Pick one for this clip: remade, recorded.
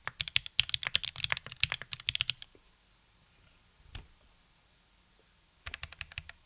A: recorded